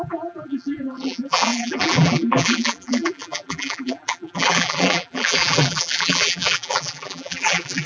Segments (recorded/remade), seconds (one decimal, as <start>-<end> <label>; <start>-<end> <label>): 0.0-7.9 remade